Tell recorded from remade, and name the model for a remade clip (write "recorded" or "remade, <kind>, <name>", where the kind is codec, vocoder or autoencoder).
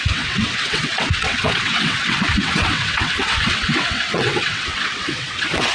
remade, vocoder, WaveNeXt